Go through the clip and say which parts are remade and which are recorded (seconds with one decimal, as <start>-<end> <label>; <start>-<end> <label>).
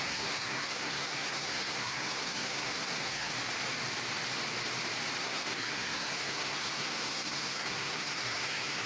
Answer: 0.0-3.3 remade; 3.3-5.2 recorded; 5.2-8.9 remade